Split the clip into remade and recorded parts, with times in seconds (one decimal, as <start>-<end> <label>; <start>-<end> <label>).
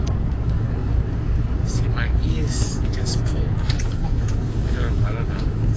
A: 0.0-5.8 remade